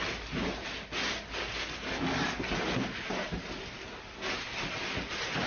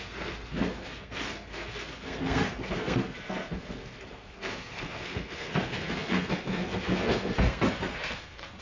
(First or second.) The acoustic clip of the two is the first